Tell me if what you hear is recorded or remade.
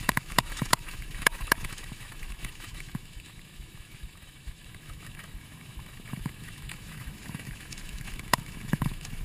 remade